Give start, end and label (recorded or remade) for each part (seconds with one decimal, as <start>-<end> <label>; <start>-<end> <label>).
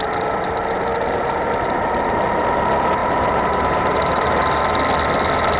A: 0.0-3.0 recorded; 3.0-4.6 remade; 4.6-5.6 recorded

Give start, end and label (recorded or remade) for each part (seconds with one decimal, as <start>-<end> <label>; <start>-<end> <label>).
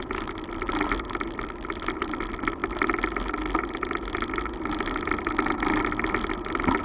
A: 0.0-6.8 recorded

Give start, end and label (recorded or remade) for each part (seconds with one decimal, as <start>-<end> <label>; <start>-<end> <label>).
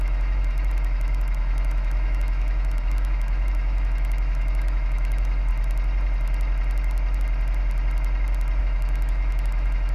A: 0.0-5.5 remade; 5.5-8.6 recorded; 8.6-9.9 remade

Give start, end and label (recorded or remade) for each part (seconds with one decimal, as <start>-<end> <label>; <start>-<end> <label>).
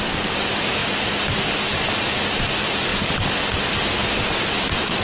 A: 0.0-5.0 recorded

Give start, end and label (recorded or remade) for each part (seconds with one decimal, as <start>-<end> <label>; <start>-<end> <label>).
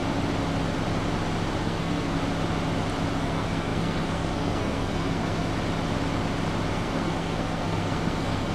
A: 0.0-1.6 recorded; 1.6-2.2 remade; 2.2-3.1 recorded; 3.1-5.5 remade; 5.5-6.7 recorded; 6.7-8.5 remade